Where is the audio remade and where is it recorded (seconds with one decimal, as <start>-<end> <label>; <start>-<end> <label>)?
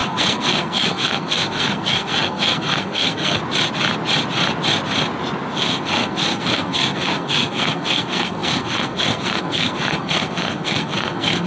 0.0-3.4 remade; 3.4-5.5 recorded; 5.5-11.5 remade